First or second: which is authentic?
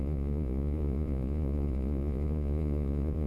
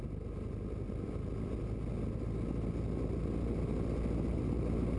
second